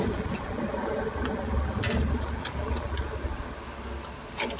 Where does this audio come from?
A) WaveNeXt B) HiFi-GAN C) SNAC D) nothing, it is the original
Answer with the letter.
D